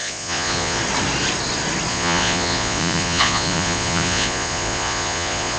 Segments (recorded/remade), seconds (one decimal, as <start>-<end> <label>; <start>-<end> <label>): 0.0-0.8 remade; 0.8-1.9 recorded; 1.9-5.6 remade